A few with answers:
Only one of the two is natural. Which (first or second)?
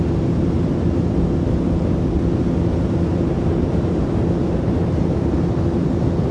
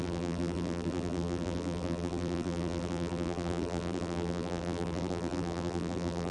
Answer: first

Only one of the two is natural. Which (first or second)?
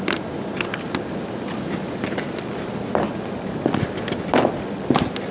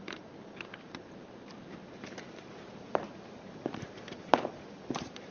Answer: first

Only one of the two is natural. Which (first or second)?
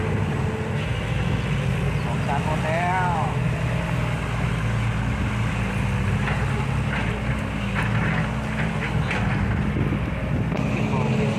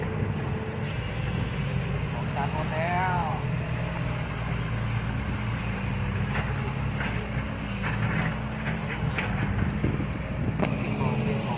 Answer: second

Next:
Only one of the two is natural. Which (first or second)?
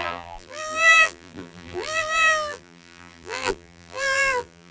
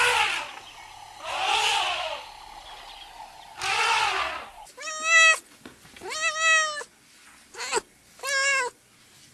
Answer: second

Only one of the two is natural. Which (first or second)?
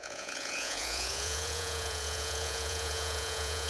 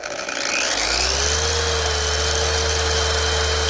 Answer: second